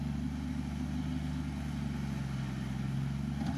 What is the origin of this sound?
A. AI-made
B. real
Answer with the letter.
B